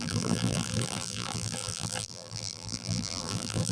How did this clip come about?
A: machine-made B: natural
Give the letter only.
A